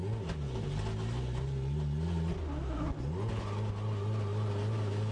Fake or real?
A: real